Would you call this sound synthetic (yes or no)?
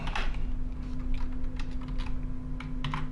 no